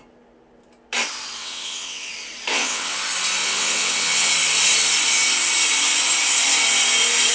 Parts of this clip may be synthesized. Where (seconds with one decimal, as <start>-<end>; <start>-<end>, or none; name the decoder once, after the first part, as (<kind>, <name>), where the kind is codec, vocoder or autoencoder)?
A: 1.4-2.1 (vocoder, WaveNeXt); 2.5-3.0; 3.4-4.3